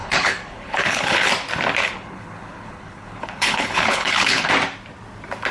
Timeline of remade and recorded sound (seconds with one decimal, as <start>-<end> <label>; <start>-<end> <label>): 0.0-1.3 remade; 1.3-1.8 recorded; 1.8-4.5 remade; 4.5-5.5 recorded